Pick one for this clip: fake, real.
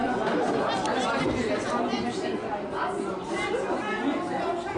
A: real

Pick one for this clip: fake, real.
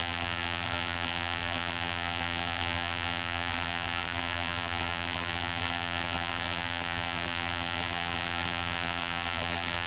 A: fake